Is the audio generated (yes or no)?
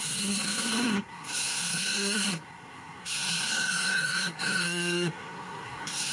yes